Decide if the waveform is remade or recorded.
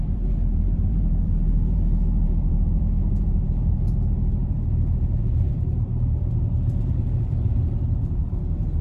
remade